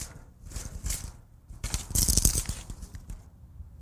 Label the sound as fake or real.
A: real